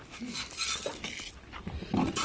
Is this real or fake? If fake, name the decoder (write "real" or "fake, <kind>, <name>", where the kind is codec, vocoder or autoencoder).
real